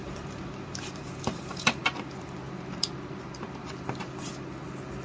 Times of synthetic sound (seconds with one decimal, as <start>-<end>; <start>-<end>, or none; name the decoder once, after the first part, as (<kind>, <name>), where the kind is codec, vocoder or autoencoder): 0.0-1.8 (vocoder, BigVGAN v2)